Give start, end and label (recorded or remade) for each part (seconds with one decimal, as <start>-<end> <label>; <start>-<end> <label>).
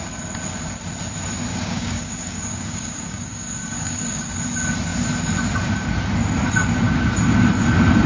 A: 0.0-1.5 recorded; 1.5-4.4 remade; 4.4-8.1 recorded